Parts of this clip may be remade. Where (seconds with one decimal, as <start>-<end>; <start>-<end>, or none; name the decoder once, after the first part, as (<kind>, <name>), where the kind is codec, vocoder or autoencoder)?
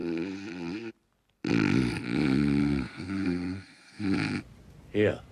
2.6-4.0 (codec, SNAC)